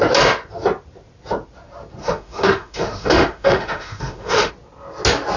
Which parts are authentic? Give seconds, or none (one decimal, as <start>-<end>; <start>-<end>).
0.0-2.0; 4.5-5.4